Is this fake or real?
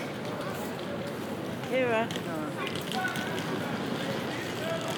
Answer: real